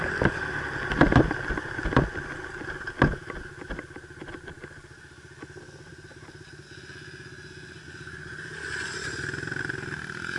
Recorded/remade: recorded